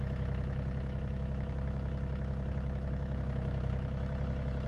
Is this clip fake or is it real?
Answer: fake